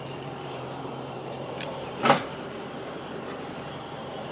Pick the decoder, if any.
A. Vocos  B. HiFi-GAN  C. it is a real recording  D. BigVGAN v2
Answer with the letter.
D